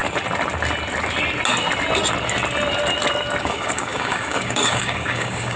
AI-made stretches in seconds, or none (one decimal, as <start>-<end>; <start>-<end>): 3.4-5.6